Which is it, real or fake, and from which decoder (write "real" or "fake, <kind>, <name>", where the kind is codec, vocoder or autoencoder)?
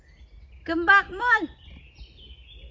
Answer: real